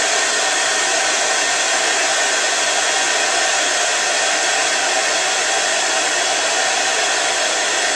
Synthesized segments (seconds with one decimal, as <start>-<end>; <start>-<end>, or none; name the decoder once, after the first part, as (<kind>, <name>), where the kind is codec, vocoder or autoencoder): 2.1-3.1 (vocoder, Vocos); 5.0-5.8